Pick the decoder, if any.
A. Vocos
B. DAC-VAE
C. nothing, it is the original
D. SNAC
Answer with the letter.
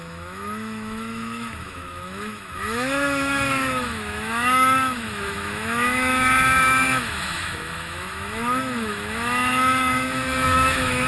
B